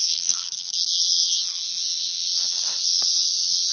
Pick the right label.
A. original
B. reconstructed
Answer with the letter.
B